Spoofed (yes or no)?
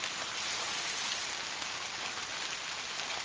no